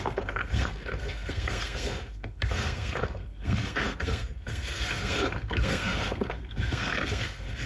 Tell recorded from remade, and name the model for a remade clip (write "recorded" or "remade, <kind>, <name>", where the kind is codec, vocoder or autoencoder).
remade, codec, SNAC